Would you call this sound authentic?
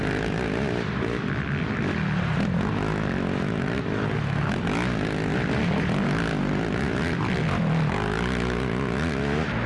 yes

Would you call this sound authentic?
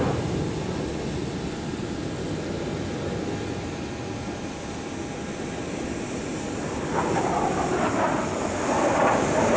yes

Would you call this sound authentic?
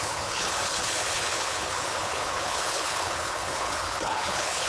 no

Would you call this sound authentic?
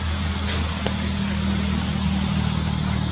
yes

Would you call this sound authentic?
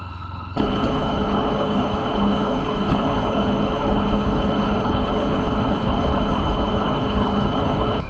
no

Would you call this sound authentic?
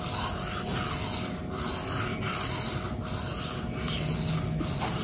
yes